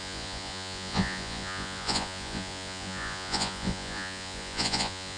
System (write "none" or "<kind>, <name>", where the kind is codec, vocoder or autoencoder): vocoder, Vocos